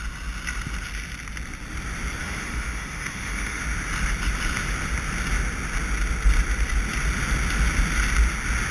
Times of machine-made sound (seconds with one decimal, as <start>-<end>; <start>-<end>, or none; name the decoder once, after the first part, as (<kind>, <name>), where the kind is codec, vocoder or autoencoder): 2.2-3.6 (autoencoder, DAC-VAE)